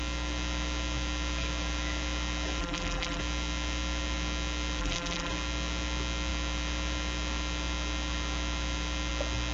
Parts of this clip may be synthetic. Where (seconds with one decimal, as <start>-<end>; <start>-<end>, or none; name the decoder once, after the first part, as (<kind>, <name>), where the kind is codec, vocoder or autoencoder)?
2.6-3.2 (vocoder, BigVGAN v2); 4.8-5.3